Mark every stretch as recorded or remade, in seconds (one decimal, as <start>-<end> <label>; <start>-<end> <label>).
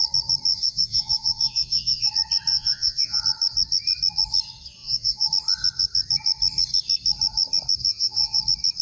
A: 0.0-0.5 recorded; 0.5-2.1 remade; 2.1-2.5 recorded; 2.5-3.2 remade; 3.2-4.8 recorded; 4.8-5.3 remade; 5.3-7.9 recorded; 7.9-8.4 remade; 8.4-8.8 recorded